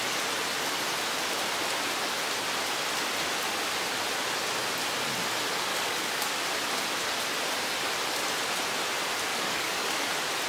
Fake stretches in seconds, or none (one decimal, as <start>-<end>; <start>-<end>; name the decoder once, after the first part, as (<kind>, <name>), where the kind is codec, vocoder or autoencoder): 5.7-6.2 (codec, DAC); 9.3-10.1